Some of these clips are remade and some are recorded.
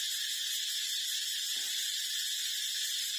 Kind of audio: recorded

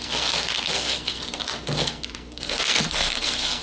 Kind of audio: remade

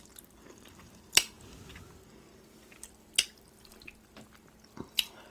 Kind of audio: recorded